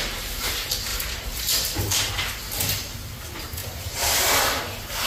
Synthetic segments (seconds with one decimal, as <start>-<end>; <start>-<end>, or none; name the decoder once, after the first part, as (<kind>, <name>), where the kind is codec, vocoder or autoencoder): 0.9-2.1 (vocoder, BigVGAN v2); 3.6-4.6